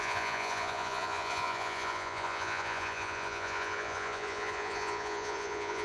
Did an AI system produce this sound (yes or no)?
yes